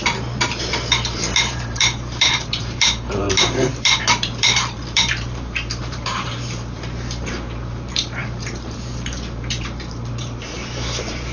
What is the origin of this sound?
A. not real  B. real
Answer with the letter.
A